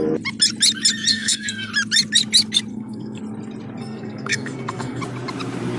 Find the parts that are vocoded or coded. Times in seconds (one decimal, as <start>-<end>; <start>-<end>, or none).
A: 1.1-1.7; 2.7-3.2; 3.8-5.0